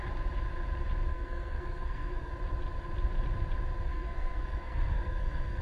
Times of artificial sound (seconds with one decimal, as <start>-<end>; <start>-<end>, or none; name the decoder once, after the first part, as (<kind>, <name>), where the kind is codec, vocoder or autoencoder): 1.1-2.3 (codec, SNAC); 3.9-5.6